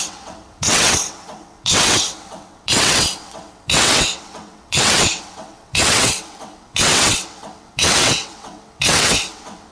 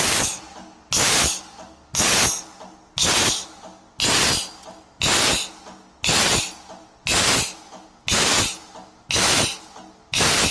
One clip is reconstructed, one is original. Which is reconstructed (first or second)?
first